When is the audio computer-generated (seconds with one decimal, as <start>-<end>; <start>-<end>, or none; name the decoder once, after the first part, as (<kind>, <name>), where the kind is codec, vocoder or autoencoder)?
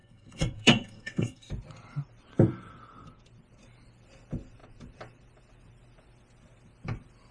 0.0-1.5 (codec, SNAC)